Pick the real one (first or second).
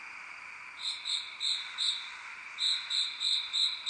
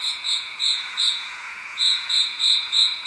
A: first